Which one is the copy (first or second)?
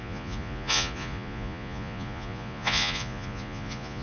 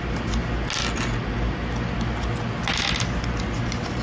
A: first